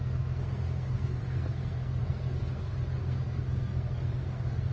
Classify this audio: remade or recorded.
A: remade